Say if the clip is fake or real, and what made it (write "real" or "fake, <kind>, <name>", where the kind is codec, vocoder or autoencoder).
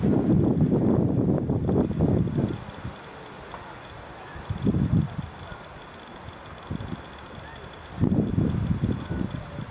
real